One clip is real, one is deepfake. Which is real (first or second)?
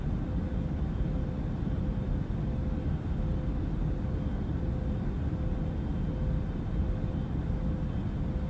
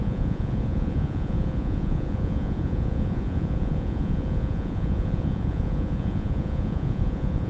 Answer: first